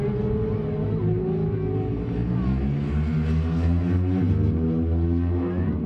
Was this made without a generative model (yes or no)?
yes